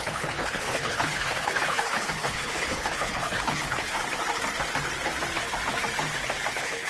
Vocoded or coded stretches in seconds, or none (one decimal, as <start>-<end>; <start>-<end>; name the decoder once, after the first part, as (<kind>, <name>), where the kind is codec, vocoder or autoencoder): 0.0-4.0 (codec, HILCodec); 6.5-6.9